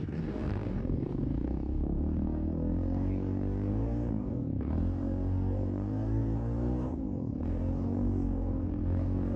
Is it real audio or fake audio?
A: fake